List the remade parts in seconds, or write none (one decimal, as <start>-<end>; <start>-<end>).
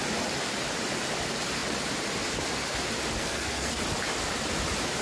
3.2-3.8